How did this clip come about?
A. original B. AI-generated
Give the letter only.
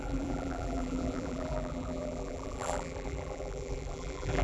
B